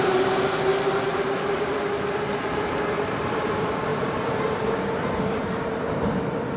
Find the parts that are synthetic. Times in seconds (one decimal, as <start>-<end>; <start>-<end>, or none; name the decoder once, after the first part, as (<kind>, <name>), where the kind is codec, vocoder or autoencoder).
0.0-0.7 (vocoder, BigVGAN v2); 1.4-6.6